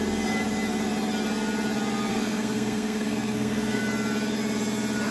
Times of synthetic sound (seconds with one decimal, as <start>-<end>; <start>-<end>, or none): 2.1-3.8